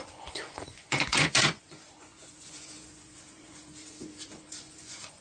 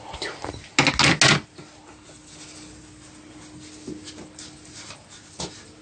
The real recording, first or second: second